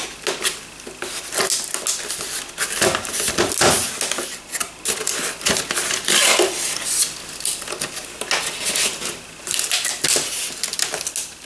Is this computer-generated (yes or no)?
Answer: no